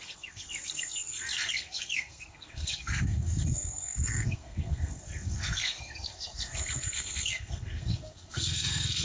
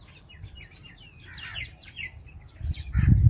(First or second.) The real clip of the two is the second